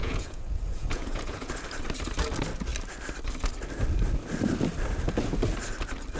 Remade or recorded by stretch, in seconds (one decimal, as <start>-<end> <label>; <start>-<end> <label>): 0.0-1.5 remade; 1.5-6.2 recorded